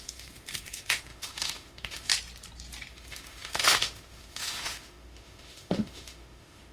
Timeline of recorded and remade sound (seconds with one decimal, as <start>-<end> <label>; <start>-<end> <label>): 0.0-2.1 remade; 2.1-2.9 recorded; 2.9-6.7 remade